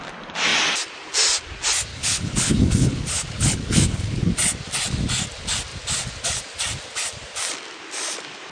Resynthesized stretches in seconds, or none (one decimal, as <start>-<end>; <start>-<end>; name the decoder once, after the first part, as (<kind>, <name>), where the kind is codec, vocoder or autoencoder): 1.9-4.3 (codec, HILCodec)